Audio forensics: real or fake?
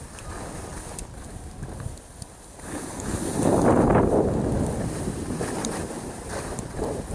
real